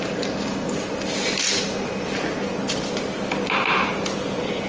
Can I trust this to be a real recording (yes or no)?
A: yes